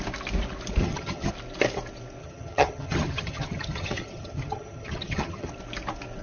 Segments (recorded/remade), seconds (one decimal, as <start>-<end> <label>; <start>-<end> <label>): 0.0-0.8 recorded; 0.8-1.3 remade; 1.3-2.2 recorded; 2.2-5.5 remade; 5.5-6.2 recorded